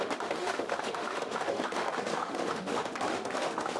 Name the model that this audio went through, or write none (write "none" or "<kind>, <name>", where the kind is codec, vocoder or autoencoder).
autoencoder, DAC-VAE